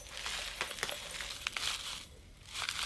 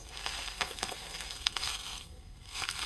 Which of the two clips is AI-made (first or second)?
second